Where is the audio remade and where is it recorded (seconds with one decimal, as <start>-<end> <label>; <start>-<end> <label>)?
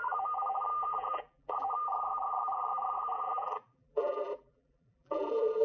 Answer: 0.0-5.6 remade